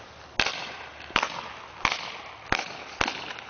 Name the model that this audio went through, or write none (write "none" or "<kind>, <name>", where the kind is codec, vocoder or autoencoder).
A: none